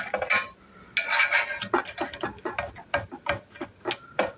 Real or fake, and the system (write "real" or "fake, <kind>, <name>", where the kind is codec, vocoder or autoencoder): real